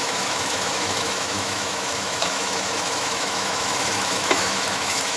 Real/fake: fake